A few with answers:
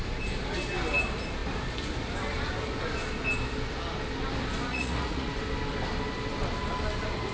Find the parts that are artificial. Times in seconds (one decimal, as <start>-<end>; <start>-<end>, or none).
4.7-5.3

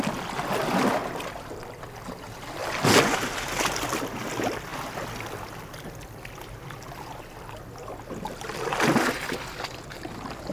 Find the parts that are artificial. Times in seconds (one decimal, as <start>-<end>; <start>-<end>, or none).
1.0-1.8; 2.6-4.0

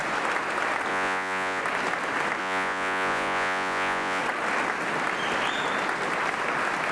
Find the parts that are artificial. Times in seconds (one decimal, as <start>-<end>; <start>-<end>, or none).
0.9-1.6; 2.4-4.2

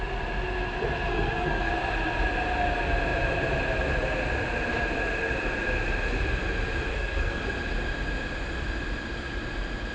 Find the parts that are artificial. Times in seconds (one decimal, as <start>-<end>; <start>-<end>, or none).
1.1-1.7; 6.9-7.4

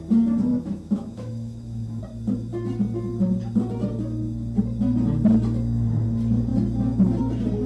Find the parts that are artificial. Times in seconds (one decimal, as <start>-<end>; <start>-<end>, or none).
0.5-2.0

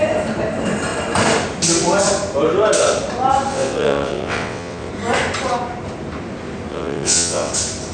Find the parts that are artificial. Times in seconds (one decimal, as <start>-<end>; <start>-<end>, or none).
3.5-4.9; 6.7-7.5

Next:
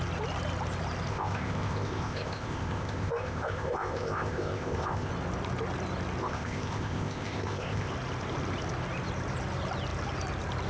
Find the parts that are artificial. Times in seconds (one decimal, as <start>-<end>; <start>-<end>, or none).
1.1-5.1; 6.2-7.9

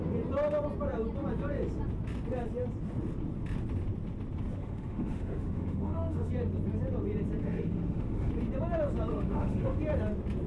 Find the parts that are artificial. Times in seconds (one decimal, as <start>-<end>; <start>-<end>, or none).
4.6-6.3; 7.4-8.3; 9.1-9.8